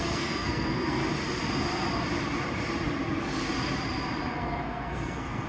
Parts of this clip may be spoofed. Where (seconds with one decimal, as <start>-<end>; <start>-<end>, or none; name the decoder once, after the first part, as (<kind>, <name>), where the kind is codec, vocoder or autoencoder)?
0.0-1.0 (codec, SNAC); 4.3-5.5